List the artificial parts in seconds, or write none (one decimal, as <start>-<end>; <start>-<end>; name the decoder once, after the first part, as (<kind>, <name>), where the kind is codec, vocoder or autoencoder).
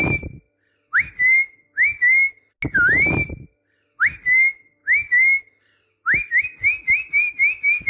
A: none